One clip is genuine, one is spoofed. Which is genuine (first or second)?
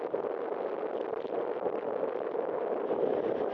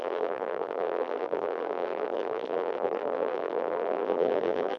first